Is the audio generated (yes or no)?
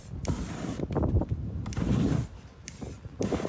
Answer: yes